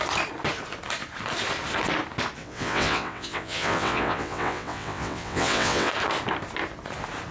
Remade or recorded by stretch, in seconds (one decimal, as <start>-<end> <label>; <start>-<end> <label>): 0.0-2.4 recorded; 2.4-5.9 remade; 5.9-7.3 recorded